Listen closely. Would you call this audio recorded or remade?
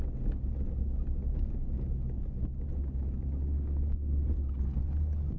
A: recorded